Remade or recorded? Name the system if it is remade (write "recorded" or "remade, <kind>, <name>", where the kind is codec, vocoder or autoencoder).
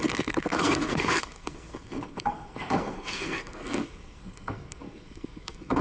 remade, codec, SNAC